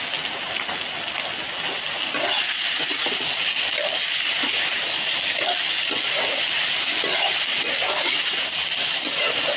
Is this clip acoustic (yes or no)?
yes